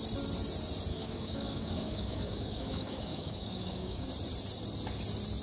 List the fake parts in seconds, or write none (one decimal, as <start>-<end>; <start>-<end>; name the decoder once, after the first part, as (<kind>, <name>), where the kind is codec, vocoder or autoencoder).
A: 0.9-4.1 (codec, DAC)